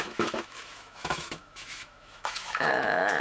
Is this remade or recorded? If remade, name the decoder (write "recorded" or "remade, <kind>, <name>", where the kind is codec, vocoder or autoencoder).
remade, autoencoder, DAC-VAE